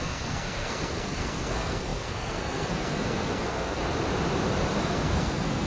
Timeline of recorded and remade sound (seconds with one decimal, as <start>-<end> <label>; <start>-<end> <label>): 0.0-3.8 remade; 3.8-4.8 recorded; 4.8-5.7 remade